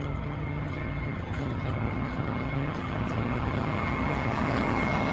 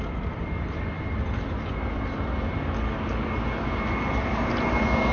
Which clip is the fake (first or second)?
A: first